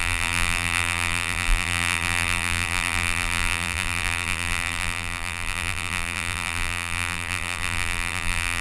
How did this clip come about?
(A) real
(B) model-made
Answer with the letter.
B